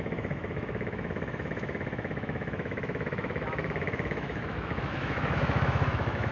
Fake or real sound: fake